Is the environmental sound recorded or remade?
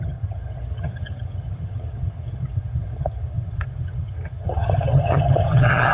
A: remade